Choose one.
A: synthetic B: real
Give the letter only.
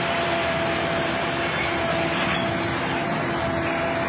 B